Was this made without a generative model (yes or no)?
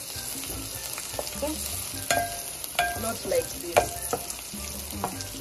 yes